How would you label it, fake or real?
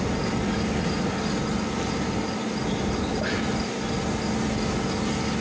real